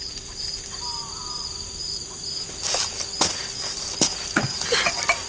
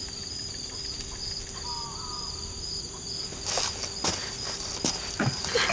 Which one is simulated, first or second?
first